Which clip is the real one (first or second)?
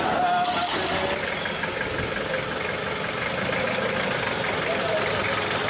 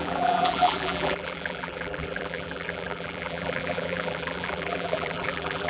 first